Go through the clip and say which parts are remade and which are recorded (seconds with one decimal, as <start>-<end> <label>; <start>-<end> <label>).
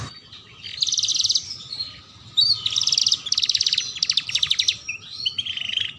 0.0-6.0 recorded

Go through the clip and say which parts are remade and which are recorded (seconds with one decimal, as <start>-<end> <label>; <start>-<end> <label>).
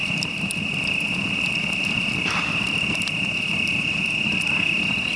0.0-0.6 remade; 0.6-5.2 recorded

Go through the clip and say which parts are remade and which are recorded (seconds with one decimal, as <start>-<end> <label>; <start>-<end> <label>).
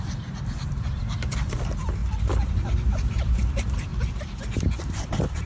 0.0-2.0 remade; 2.0-2.5 recorded; 2.5-3.9 remade; 3.9-4.6 recorded; 4.6-5.5 remade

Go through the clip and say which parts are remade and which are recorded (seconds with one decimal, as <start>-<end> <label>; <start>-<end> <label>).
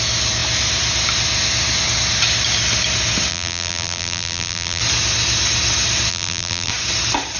0.0-3.3 recorded; 3.3-4.8 remade; 4.8-6.1 recorded; 6.1-6.7 remade; 6.7-7.4 recorded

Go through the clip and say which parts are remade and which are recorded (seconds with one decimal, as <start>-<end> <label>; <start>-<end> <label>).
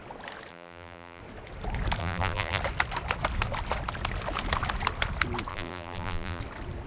0.0-0.5 recorded; 0.5-1.2 remade; 1.2-2.0 recorded; 2.0-2.6 remade; 2.6-5.5 recorded; 5.5-6.4 remade; 6.4-6.9 recorded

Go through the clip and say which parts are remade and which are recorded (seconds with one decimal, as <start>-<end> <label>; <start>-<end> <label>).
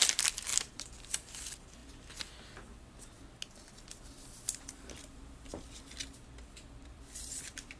0.0-1.8 remade; 1.8-6.3 recorded; 6.3-7.8 remade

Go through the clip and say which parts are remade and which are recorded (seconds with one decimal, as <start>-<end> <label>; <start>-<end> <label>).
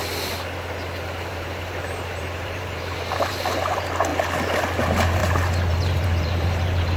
0.0-1.3 recorded; 1.3-4.1 remade; 4.1-4.8 recorded; 4.8-5.2 remade; 5.2-5.7 recorded; 5.7-7.0 remade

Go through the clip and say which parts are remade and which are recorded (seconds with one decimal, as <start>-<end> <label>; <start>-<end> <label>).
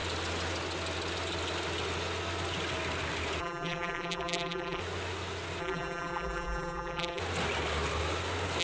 0.0-3.4 recorded; 3.4-4.8 remade; 4.8-5.6 recorded; 5.6-7.2 remade; 7.2-8.6 recorded